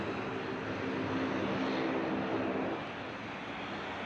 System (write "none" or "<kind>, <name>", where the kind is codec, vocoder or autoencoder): none